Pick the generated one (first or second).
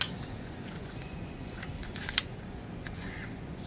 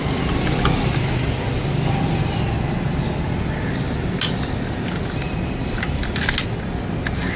first